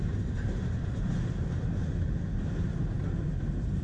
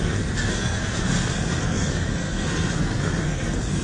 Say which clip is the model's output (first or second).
second